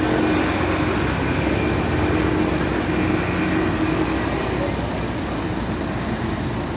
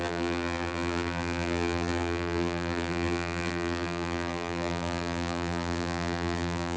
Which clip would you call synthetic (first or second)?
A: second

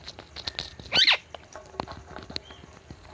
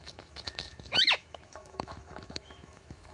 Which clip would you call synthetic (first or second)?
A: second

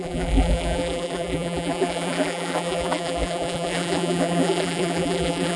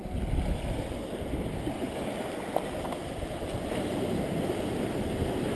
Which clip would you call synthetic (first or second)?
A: first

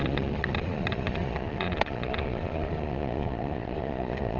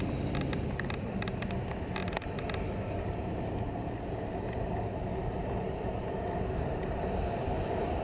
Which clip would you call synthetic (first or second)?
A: first